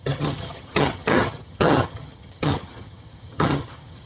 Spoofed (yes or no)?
yes